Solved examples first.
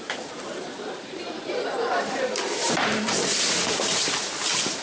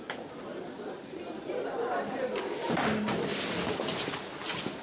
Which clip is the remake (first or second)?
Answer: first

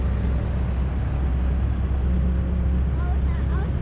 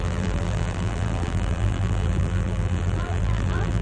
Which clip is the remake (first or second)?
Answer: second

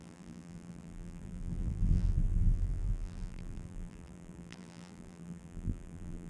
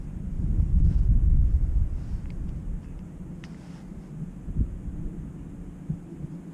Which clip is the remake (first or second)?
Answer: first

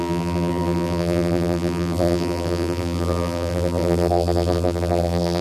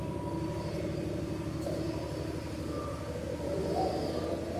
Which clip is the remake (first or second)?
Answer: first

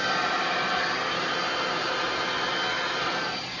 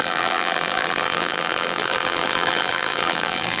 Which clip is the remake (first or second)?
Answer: second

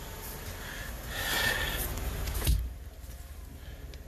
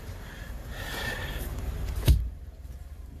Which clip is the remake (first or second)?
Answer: second